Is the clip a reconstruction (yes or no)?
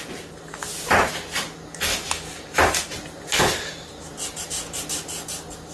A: no